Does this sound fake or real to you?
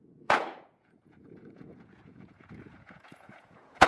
fake